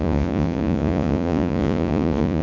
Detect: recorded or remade remade